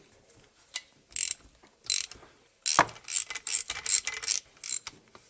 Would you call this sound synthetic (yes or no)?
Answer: no